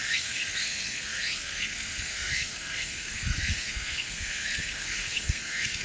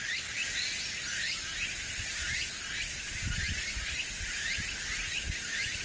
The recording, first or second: second